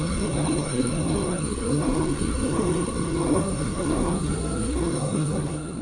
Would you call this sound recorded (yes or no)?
no